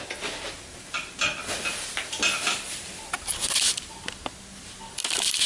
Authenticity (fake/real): real